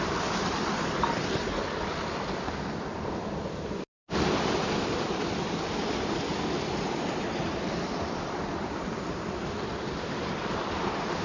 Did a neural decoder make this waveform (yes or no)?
no